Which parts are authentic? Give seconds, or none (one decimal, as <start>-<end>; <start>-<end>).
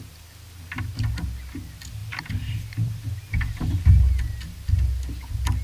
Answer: 0.0-2.0; 3.3-5.6